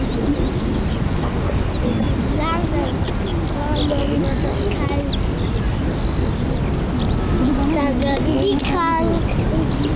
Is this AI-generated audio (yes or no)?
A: no